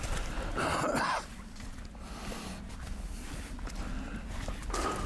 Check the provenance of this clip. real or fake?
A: real